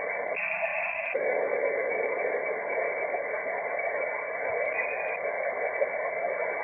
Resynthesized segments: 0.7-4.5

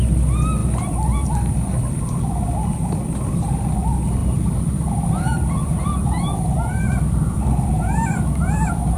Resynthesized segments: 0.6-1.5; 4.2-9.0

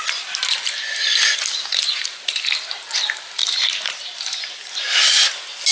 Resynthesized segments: 3.4-5.0

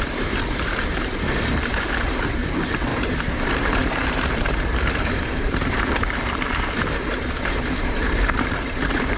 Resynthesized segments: 0.0-9.2

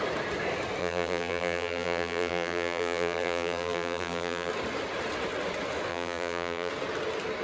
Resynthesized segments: 0.8-4.5; 5.9-6.7

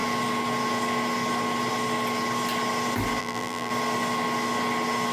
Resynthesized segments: 3.2-3.7

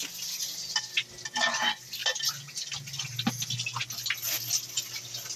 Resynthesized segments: none

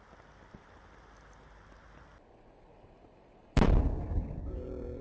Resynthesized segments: 2.7-3.7